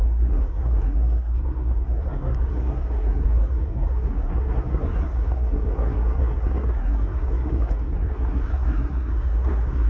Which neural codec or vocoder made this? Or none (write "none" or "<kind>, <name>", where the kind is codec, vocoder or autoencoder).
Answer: codec, SNAC